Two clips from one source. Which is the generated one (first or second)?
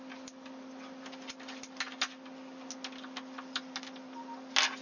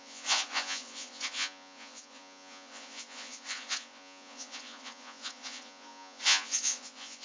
second